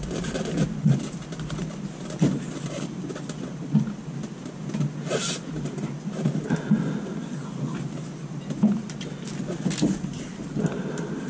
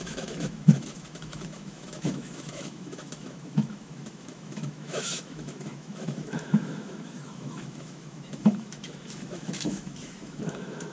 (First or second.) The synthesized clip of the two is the second